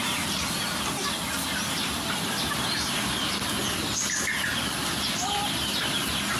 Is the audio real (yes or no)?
yes